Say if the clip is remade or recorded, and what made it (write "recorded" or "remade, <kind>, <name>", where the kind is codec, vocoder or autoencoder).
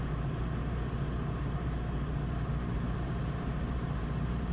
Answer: remade, vocoder, BigVGAN v2